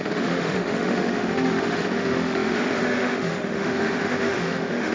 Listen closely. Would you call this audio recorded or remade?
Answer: remade